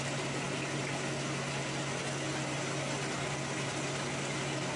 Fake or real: real